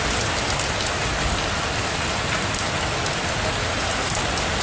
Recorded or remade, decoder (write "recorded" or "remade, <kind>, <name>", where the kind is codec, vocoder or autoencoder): recorded